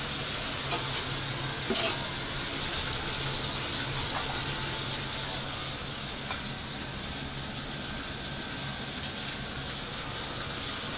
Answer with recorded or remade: recorded